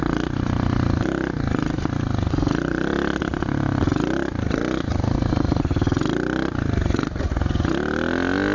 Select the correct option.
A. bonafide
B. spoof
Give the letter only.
A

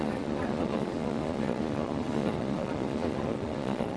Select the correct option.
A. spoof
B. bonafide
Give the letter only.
A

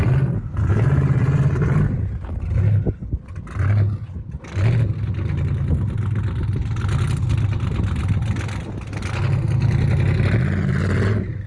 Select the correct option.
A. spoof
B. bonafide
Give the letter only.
B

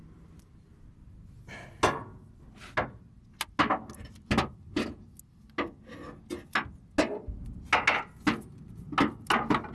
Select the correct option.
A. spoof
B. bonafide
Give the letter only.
B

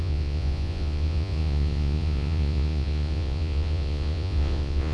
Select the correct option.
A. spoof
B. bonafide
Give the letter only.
A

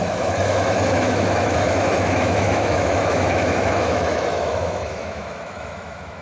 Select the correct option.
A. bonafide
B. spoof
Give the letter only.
B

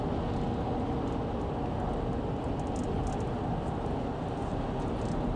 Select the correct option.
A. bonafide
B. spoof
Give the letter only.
A